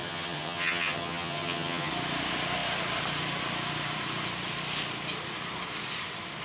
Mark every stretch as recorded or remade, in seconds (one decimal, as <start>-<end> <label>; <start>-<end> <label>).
0.0-1.9 remade; 1.9-6.4 recorded